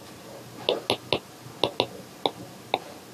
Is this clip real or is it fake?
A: real